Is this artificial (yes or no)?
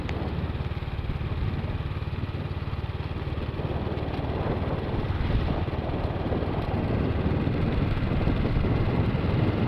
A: no